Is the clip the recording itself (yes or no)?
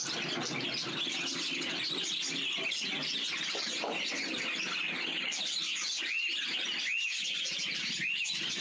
yes